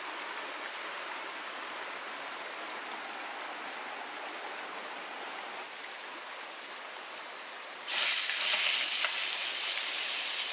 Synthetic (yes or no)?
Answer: no